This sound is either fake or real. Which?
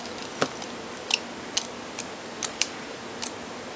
real